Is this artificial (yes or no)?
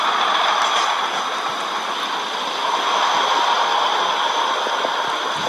no